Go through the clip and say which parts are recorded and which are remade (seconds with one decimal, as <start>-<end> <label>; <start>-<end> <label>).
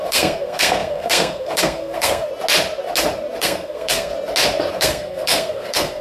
0.0-2.3 remade; 2.3-3.4 recorded; 3.4-4.1 remade; 4.1-4.7 recorded; 4.7-6.0 remade